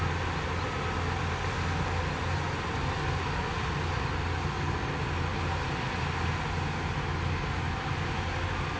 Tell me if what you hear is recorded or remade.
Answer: recorded